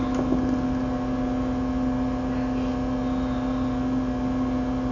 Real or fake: real